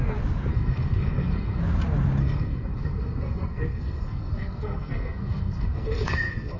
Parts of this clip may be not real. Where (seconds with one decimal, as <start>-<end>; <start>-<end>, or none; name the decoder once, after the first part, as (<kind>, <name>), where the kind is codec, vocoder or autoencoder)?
0.5-1.6 (codec, SNAC); 2.2-6.6